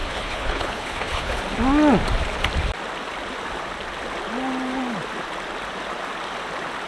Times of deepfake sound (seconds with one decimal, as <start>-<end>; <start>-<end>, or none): 0.0-1.4